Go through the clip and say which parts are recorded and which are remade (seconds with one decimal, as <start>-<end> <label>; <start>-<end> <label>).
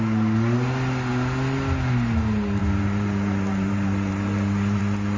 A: 0.0-2.6 recorded; 2.6-4.8 remade; 4.8-5.2 recorded